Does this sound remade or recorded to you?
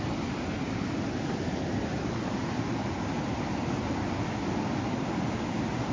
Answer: recorded